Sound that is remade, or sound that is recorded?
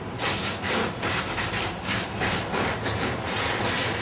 recorded